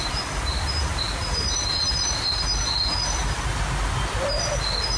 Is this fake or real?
real